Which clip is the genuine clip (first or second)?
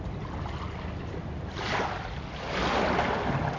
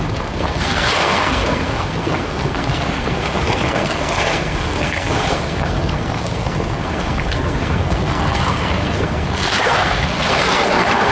first